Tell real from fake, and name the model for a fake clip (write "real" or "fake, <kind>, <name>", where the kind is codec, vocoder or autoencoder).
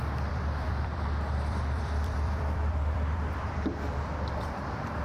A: fake, vocoder, BigVGAN v2